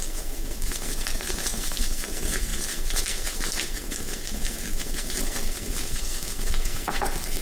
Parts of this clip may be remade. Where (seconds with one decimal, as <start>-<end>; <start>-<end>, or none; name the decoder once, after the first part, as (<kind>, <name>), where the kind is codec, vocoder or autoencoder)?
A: 0.0-7.4 (codec, SNAC)

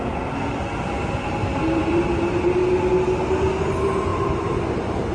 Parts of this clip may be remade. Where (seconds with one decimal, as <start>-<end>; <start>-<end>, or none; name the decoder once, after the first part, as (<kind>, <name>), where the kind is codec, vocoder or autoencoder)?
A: 1.4-2.0 (vocoder, BigVGAN v2); 4.1-4.6

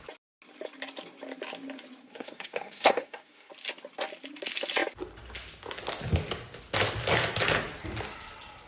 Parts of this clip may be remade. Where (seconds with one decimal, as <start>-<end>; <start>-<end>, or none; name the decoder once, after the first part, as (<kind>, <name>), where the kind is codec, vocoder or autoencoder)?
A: 2.0-3.5 (codec, SNAC)

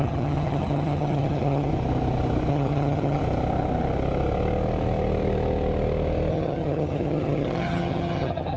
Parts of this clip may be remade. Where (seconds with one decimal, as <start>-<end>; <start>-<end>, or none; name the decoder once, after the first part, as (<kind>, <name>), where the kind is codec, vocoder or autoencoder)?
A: 0.0-1.7 (vocoder, HiFi-GAN); 2.5-3.2; 6.3-8.6

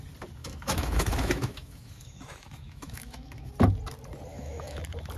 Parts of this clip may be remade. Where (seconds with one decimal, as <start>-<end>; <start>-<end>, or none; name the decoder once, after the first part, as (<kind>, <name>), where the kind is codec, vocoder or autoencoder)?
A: 0.4-3.5 (autoencoder, DAC-VAE); 4.3-4.8

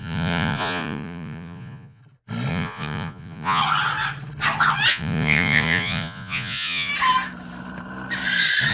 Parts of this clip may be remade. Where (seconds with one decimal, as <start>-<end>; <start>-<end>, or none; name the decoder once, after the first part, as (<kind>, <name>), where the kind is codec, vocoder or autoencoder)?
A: 0.0-2.0 (vocoder, Vocos); 2.5-3.6; 4.9-6.9

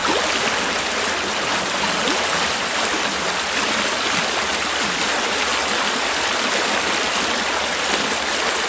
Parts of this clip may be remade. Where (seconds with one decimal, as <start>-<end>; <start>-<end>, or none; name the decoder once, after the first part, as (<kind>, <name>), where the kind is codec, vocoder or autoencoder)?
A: none